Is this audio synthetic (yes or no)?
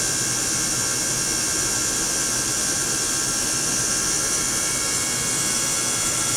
no